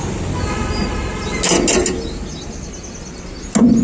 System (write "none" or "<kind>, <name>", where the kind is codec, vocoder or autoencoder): none